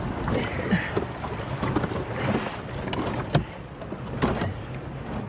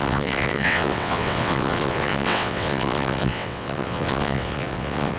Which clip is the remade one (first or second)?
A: second